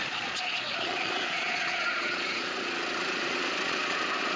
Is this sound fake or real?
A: fake